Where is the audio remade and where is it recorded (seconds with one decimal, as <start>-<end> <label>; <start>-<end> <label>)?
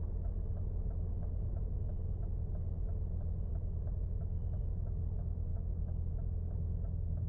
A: 0.0-3.5 recorded; 3.5-4.6 remade; 4.6-5.5 recorded; 5.5-6.1 remade; 6.1-7.3 recorded